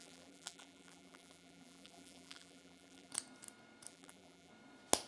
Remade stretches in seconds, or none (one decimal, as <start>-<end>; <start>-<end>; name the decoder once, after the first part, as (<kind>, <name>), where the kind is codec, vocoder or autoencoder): 0.0-3.1 (vocoder, BigVGAN v2); 3.9-4.5